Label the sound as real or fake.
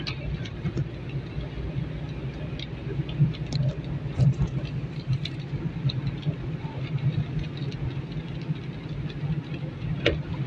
real